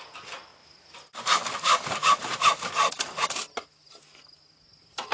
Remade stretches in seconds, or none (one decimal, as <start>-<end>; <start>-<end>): none